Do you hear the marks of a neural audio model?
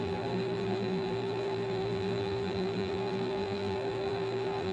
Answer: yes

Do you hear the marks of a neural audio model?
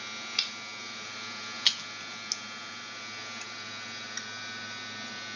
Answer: no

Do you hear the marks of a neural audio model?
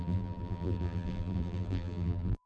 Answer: yes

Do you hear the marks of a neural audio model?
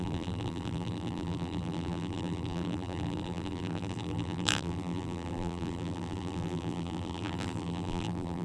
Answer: yes